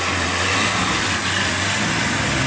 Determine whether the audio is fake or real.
real